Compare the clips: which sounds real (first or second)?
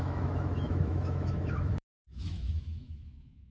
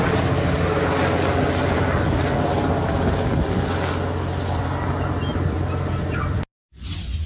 second